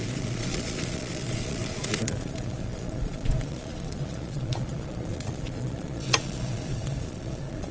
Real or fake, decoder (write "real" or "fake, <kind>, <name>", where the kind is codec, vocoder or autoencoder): fake, vocoder, Vocos